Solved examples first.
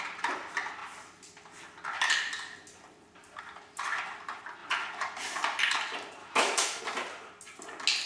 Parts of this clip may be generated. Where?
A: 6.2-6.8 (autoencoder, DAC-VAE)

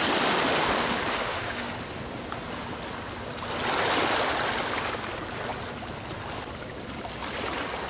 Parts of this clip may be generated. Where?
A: 1.1-1.7 (autoencoder, DAC-VAE)

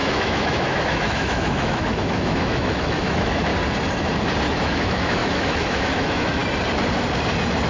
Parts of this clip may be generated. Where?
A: 0.0-3.5 (autoencoder, DAC-VAE); 4.5-6.4

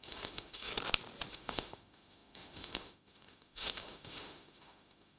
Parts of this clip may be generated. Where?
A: 0.0-0.7 (autoencoder, DAC-VAE); 1.3-5.2

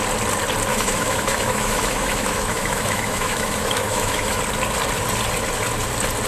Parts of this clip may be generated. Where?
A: 0.7-4.4 (autoencoder, DAC-VAE)

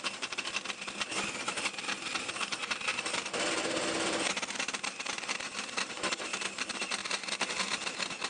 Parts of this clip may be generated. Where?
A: none

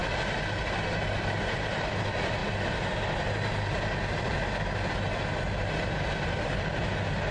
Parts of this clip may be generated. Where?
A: none

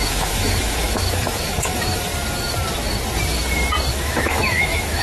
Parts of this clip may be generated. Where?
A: 0.0-2.1 (autoencoder, DAC-VAE); 3.9-5.0